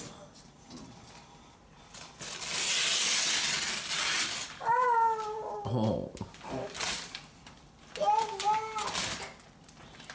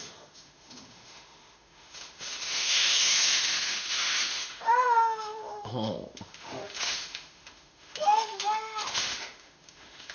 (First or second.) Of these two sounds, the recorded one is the first